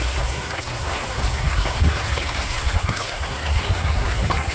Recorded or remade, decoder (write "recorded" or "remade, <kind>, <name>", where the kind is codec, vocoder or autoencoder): remade, codec, SNAC